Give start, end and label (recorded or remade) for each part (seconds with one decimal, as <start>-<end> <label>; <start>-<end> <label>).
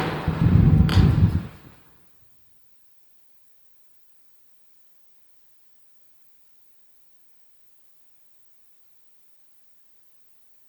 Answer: 0.0-10.7 remade